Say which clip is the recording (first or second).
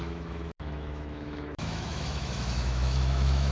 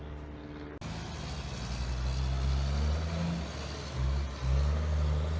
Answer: second